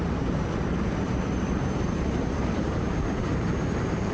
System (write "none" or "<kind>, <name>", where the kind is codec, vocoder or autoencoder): vocoder, BigVGAN v2